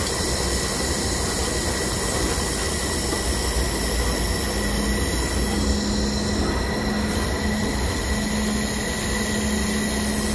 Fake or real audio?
real